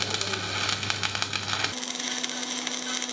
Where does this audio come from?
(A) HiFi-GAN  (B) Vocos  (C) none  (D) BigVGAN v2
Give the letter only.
C